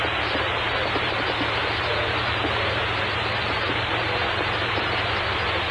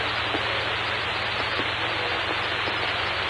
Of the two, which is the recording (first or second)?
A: second